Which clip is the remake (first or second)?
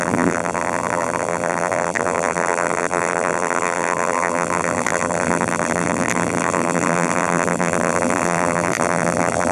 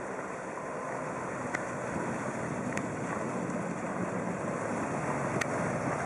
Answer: first